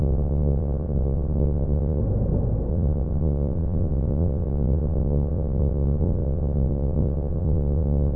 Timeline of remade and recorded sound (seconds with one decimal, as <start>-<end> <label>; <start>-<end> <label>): 0.0-2.0 remade; 2.0-2.7 recorded; 2.7-8.2 remade

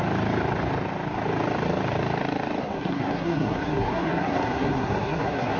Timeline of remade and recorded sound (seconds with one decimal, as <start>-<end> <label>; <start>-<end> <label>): 0.0-2.6 recorded; 2.6-5.6 remade

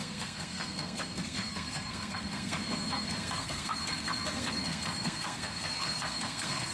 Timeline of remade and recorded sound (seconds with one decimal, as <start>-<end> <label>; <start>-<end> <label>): 0.0-6.7 remade

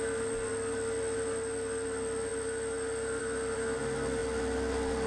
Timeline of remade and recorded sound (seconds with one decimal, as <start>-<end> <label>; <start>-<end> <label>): 0.0-5.1 recorded

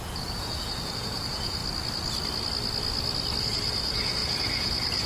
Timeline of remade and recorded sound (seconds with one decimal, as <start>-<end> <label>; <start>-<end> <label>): 0.0-1.6 remade; 1.6-3.4 recorded; 3.4-5.1 remade

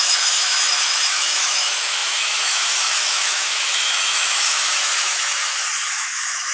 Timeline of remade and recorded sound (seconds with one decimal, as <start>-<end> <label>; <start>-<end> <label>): 0.0-5.4 remade; 5.4-5.9 recorded; 5.9-6.5 remade